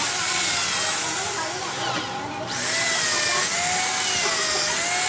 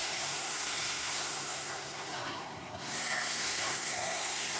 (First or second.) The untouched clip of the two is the first